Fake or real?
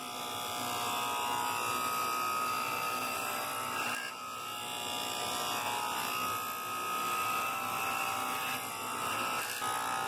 real